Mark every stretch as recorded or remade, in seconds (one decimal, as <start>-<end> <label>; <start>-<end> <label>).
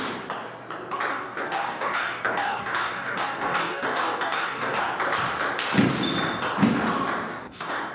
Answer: 0.0-1.1 recorded; 1.1-4.8 remade; 4.8-7.3 recorded; 7.3-7.9 remade